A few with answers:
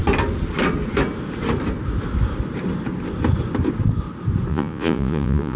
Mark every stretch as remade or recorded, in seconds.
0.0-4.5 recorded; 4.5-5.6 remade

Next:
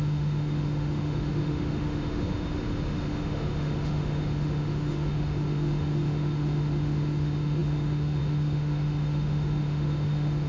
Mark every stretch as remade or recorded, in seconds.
0.0-10.5 remade

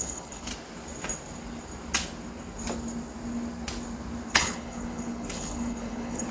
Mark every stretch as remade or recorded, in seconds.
0.0-0.5 remade; 0.5-4.3 recorded; 4.3-6.3 remade

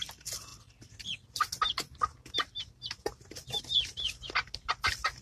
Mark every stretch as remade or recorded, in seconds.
0.0-5.2 recorded

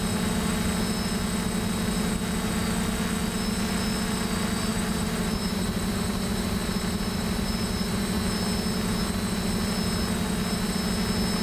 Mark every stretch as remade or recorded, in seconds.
0.0-4.7 recorded; 4.7-8.0 remade; 8.0-11.4 recorded

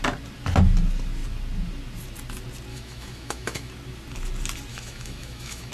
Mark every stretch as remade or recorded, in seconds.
0.0-2.7 recorded; 2.7-3.7 remade; 3.7-4.7 recorded; 4.7-5.7 remade

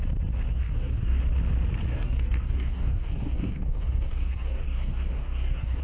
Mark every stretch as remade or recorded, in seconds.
0.0-0.5 recorded; 0.5-1.2 remade; 1.2-1.9 recorded; 1.9-5.8 remade